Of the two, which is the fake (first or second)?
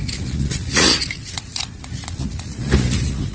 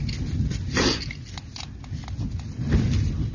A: first